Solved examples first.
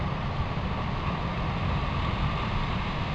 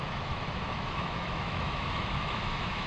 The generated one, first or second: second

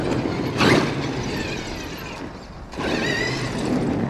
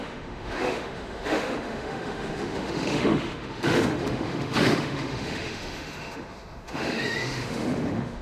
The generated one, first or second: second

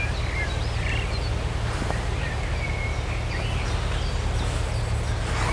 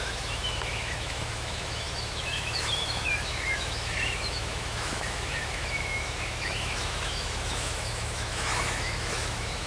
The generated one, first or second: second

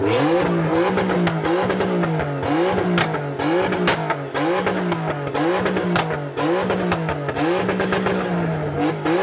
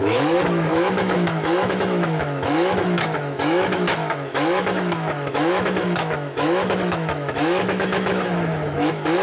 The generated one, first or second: second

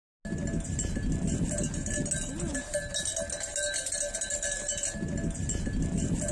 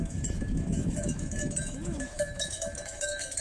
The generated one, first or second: second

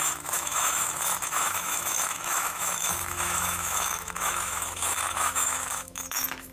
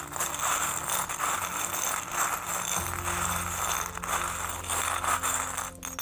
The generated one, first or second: first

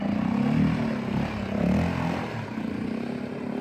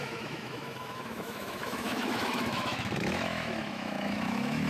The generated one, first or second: second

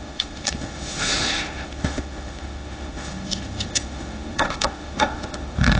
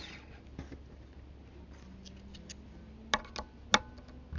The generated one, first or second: first